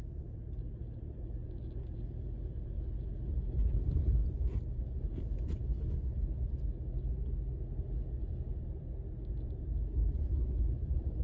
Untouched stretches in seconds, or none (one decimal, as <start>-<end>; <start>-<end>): 0.0-11.2